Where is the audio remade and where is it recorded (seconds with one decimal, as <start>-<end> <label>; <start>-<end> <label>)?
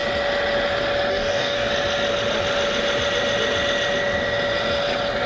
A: 0.0-1.1 recorded; 1.1-1.7 remade; 1.7-5.3 recorded